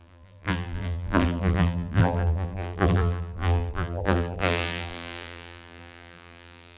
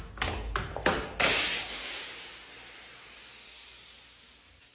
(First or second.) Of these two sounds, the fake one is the first